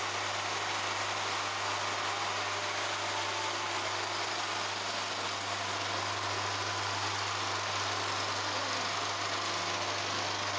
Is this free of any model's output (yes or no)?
yes